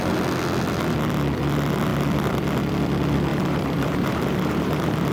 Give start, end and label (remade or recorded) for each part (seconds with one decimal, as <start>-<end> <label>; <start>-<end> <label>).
0.0-3.3 recorded; 3.3-5.1 remade

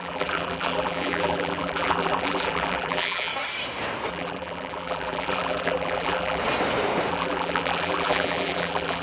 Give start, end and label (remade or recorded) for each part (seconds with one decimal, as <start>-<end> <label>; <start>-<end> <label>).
0.0-3.3 remade; 3.3-4.1 recorded; 4.1-6.4 remade; 6.4-7.1 recorded; 7.1-9.0 remade

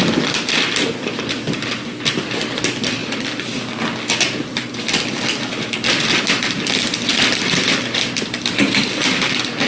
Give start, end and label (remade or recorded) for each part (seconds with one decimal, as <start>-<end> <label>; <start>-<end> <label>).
0.0-9.7 remade

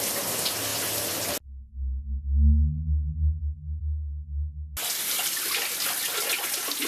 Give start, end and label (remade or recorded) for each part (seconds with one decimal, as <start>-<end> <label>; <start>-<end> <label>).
0.0-6.9 recorded

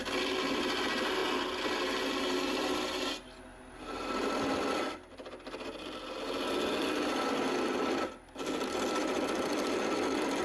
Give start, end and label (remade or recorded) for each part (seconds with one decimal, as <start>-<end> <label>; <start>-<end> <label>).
0.0-3.5 recorded; 3.5-4.5 remade; 4.5-10.4 recorded